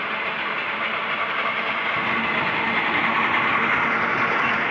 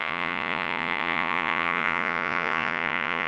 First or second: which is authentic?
first